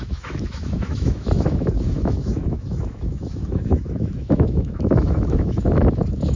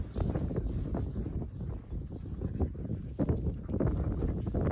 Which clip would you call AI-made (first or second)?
first